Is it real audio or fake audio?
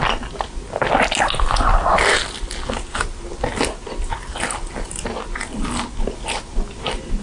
real